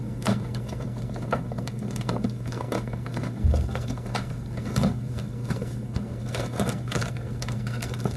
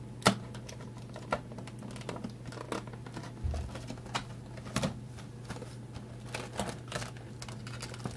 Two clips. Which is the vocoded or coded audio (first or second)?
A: first